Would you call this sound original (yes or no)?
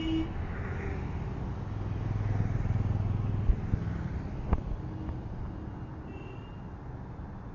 yes